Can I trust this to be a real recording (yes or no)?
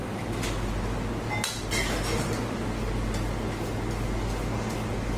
yes